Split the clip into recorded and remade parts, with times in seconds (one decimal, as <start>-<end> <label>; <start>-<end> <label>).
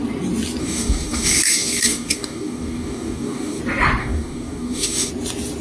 0.0-0.6 recorded; 0.6-3.6 remade; 3.6-4.0 recorded; 4.0-5.1 remade; 5.1-5.6 recorded